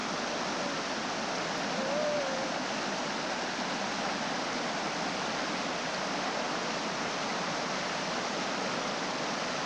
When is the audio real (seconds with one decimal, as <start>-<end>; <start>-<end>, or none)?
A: 0.0-9.7

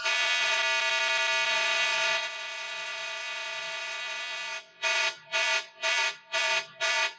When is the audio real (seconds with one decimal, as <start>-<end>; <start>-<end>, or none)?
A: 0.6-1.5

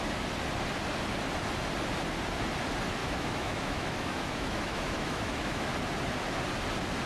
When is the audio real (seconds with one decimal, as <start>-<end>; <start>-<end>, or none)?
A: 0.0-3.0; 5.7-7.1

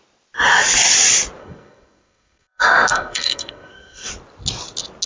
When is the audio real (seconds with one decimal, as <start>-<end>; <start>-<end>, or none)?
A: 0.0-1.4; 4.1-5.1

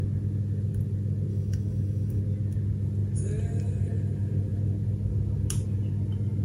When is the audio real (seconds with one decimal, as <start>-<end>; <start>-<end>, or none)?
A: 0.0-1.3; 2.2-6.4

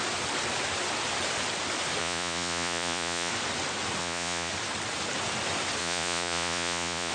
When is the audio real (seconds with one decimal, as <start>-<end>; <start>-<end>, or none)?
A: 0.0-2.0; 3.3-4.0; 4.5-5.8

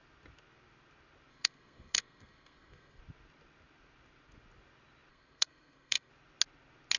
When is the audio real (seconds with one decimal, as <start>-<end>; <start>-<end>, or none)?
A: 0.0-1.3; 3.0-5.1; 6.1-7.0

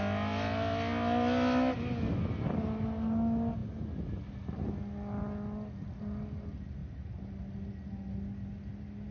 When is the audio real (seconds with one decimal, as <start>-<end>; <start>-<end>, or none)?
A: 0.0-9.1